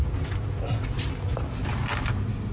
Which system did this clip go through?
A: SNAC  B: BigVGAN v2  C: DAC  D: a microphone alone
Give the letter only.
D